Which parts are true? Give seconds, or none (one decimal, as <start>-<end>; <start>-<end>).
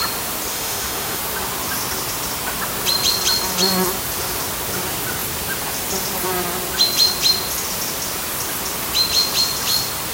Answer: 0.0-0.5; 1.2-10.1